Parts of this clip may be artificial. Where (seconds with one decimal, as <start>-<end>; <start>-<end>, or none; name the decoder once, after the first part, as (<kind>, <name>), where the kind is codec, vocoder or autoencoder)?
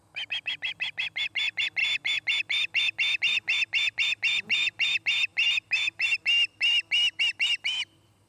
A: none